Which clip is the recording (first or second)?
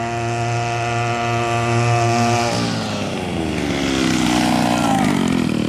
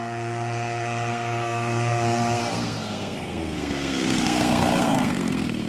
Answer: first